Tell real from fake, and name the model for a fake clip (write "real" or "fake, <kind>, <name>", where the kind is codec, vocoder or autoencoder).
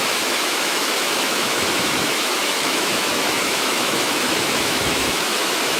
fake, autoencoder, DAC-VAE